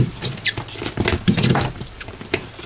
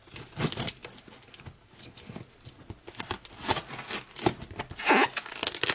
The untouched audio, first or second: second